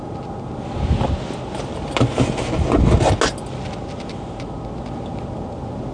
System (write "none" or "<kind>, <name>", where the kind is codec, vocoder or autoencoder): none